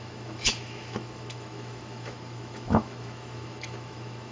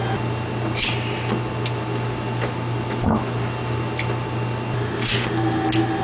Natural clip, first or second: second